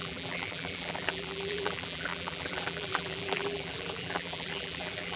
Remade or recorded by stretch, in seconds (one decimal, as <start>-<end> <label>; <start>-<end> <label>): 0.0-5.2 remade

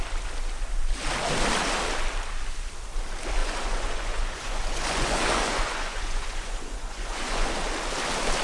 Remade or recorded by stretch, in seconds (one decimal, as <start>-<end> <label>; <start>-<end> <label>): 0.0-3.4 recorded; 3.4-7.5 remade; 7.5-8.4 recorded

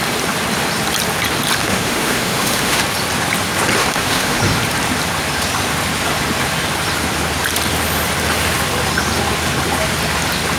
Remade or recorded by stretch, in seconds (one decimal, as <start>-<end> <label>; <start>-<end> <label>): 0.0-1.6 recorded; 1.6-2.8 remade; 2.8-3.8 recorded; 3.8-4.4 remade; 4.4-10.6 recorded

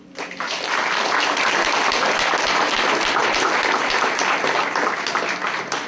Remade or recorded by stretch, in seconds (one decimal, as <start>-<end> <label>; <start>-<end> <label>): 0.0-5.9 recorded